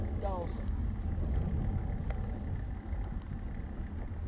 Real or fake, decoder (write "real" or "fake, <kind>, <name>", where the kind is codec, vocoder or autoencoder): real